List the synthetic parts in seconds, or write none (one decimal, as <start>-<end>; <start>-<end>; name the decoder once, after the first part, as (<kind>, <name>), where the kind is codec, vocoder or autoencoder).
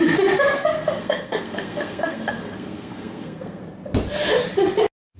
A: 0.5-3.6 (codec, SNAC)